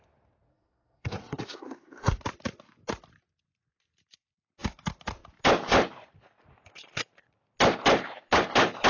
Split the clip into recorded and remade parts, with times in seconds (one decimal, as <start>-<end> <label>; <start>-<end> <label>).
0.0-0.5 recorded; 0.5-2.2 remade; 2.2-8.9 recorded